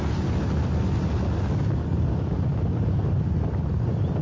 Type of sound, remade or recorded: recorded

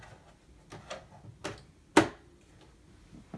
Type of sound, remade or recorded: recorded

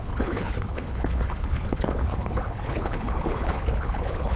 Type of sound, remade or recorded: remade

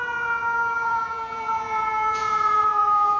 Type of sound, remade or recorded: remade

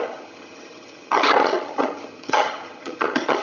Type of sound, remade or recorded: remade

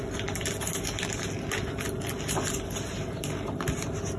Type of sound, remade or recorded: recorded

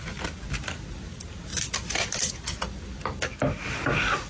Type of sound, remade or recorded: recorded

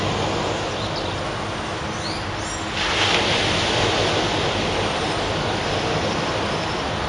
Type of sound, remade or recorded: recorded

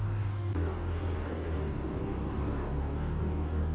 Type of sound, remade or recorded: remade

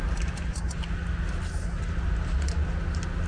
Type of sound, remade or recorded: recorded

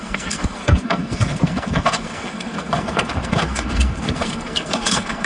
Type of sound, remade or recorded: remade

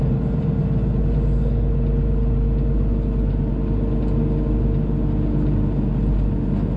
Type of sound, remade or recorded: recorded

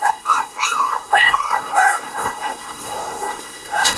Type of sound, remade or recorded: remade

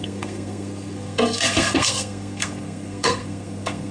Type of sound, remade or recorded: remade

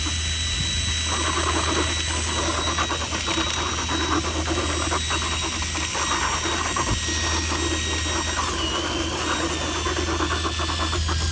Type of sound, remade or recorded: recorded